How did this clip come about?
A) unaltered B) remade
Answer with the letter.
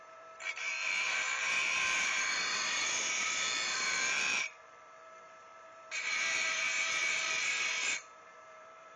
B